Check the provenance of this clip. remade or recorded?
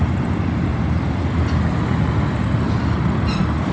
recorded